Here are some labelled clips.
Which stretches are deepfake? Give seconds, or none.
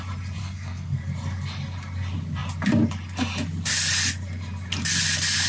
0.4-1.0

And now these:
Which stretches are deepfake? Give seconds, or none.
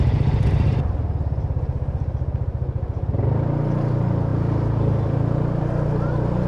none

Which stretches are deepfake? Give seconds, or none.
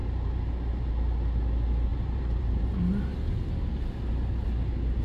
0.0-0.9; 1.9-2.8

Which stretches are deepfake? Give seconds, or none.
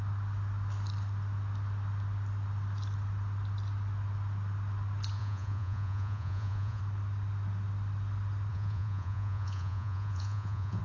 5.2-6.8; 8.5-10.8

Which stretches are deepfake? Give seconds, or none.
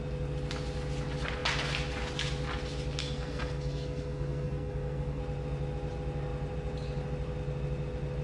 3.0-5.2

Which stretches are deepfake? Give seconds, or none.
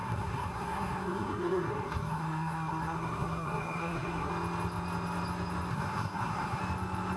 0.0-4.3; 5.7-6.6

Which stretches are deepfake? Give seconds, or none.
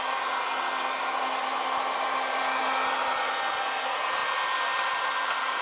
none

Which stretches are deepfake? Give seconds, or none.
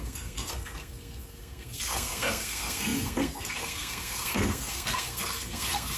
0.0-6.0